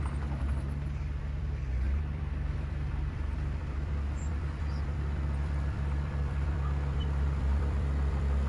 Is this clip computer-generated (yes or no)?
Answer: yes